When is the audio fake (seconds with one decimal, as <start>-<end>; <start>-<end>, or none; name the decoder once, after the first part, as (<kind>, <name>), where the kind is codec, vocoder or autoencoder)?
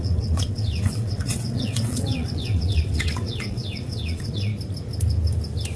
0.0-4.5 (vocoder, WaveNeXt)